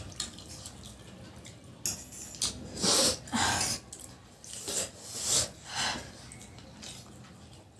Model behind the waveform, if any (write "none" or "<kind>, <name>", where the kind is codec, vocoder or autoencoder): none